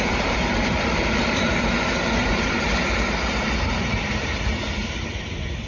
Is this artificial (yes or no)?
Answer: yes